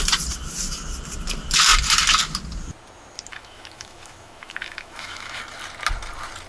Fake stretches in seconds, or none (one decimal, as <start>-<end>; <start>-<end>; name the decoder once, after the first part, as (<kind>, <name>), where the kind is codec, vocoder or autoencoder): 3.3-5.4 (autoencoder, DAC-VAE)